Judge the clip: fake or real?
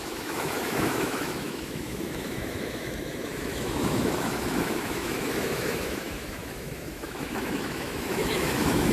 fake